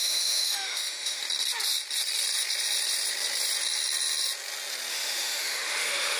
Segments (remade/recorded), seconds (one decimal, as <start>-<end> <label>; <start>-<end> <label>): 0.0-1.2 remade; 1.2-4.9 recorded; 4.9-6.2 remade